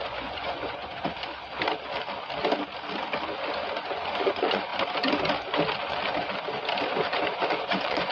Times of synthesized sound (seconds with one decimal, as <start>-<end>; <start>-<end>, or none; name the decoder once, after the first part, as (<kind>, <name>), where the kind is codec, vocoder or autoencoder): 0.0-1.3 (vocoder, Vocos); 3.7-4.7; 7.5-8.1